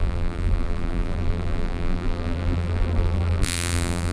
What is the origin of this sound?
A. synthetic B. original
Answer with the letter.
A